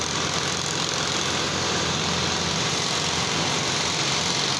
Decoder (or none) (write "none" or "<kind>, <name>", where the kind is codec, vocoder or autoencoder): none